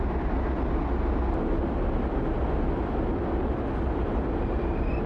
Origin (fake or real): real